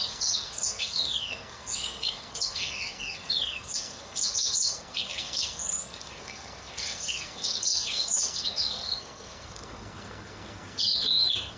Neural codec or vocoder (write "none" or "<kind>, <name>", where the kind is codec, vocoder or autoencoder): codec, SNAC